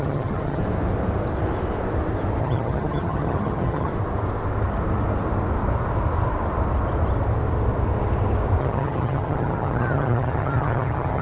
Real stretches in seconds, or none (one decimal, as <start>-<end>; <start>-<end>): 0.6-2.4; 3.9-8.6